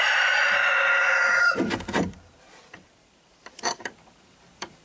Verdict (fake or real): fake